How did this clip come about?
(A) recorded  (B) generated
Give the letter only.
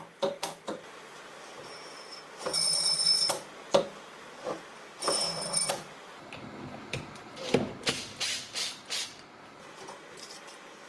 B